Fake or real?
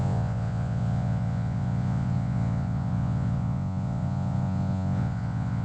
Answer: fake